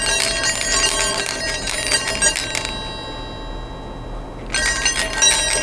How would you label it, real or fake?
real